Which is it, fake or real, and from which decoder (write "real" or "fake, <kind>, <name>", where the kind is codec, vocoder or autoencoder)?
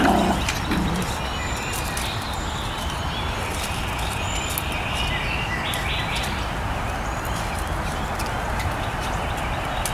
real